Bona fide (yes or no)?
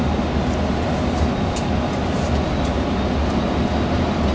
yes